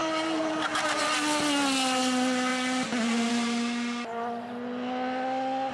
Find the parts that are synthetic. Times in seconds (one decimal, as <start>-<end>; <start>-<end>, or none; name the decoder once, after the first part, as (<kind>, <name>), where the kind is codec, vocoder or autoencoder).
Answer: 0.0-1.0 (vocoder, BigVGAN v2)